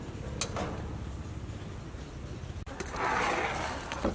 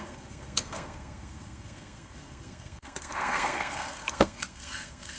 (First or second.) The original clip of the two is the first